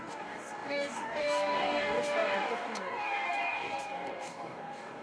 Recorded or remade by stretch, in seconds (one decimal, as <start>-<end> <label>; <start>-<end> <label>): 0.0-5.0 remade